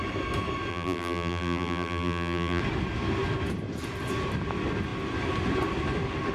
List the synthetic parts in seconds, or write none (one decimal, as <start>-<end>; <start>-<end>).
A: 0.7-2.6